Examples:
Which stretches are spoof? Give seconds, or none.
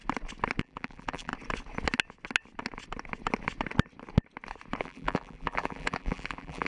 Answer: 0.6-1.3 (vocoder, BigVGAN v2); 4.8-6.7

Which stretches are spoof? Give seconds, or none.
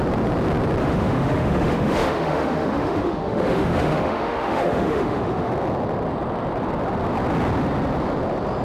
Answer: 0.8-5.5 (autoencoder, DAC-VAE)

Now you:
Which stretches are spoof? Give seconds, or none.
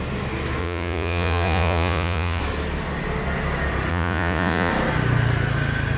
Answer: 0.6-2.4 (vocoder, Vocos); 3.9-4.7